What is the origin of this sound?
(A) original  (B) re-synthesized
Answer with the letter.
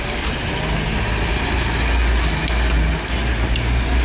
A